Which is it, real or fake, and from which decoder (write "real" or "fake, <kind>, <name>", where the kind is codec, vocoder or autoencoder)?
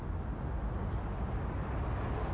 real